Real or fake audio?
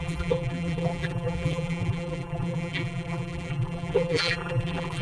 fake